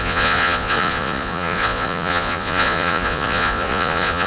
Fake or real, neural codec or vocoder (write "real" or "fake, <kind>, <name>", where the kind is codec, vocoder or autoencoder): fake, vocoder, Vocos